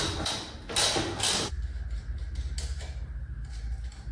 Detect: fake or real real